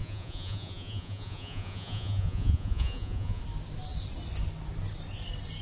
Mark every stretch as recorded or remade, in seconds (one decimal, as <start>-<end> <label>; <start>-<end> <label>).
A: 0.0-3.4 remade; 3.4-5.6 recorded